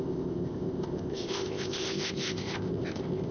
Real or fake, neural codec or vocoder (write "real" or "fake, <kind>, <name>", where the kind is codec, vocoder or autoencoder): fake, codec, ZipCodec